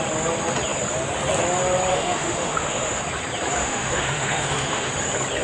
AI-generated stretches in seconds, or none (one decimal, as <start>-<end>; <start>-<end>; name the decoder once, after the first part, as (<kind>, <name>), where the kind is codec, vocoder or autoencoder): 1.9-3.0 (autoencoder, DAC-VAE); 3.6-4.9